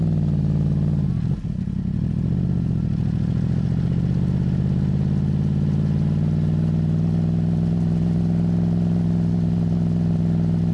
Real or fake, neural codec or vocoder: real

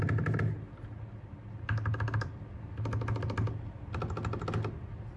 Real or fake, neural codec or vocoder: real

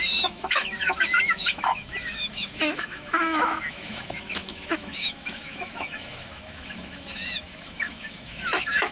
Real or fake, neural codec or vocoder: fake, autoencoder, DAC-VAE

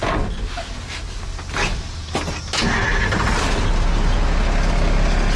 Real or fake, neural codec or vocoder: real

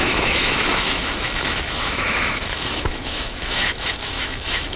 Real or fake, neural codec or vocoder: fake, autoencoder, DAC-VAE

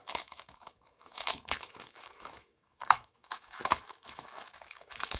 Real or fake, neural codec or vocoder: fake, autoencoder, DAC-VAE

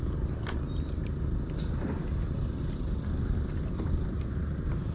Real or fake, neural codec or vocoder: real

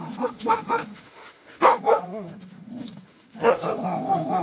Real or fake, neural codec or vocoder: fake, autoencoder, DAC-VAE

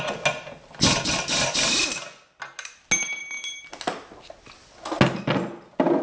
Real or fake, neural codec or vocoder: real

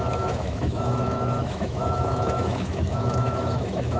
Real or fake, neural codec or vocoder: fake, autoencoder, DAC-VAE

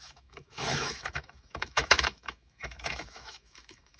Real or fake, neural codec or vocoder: fake, autoencoder, DAC-VAE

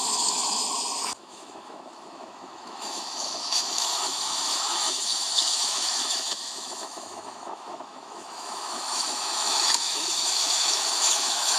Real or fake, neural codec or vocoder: fake, autoencoder, DAC-VAE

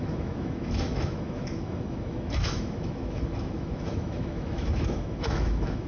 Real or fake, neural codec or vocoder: fake, autoencoder, DAC-VAE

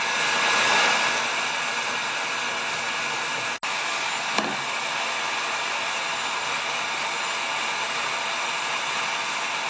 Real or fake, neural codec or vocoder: real